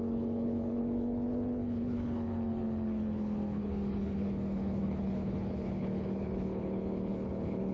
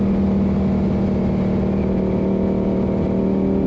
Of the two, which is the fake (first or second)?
first